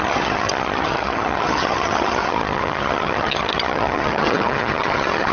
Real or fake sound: fake